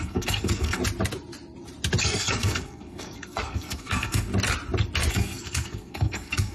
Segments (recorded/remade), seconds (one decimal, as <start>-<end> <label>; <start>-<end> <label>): 0.0-0.8 remade; 0.8-2.0 recorded; 2.0-4.3 remade; 4.3-5.1 recorded; 5.1-6.5 remade